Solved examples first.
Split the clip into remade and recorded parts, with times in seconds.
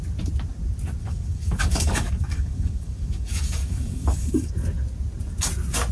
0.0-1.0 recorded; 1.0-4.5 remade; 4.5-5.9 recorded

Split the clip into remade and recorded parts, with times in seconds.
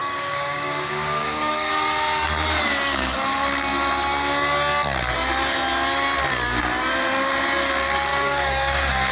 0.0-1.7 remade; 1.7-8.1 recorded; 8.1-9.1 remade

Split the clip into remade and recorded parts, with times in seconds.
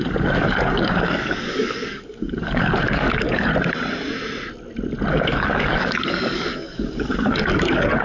0.0-3.5 remade; 3.5-5.1 recorded; 5.1-8.0 remade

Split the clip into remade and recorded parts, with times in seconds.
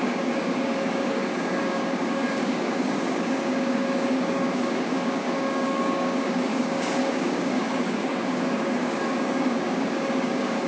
0.0-10.7 remade